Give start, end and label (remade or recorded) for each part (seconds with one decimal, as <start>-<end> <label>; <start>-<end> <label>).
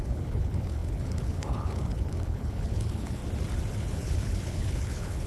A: 0.0-3.2 remade; 3.2-3.7 recorded; 3.7-5.3 remade